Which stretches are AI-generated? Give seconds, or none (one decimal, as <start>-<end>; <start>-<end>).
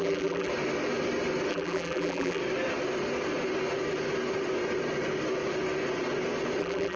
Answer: 0.0-0.5; 1.5-2.4; 6.6-7.0